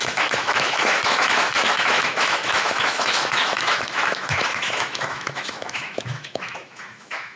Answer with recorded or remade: remade